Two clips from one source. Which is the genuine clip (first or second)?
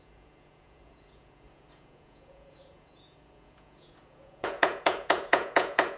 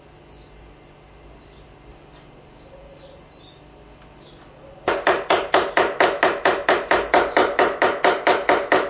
second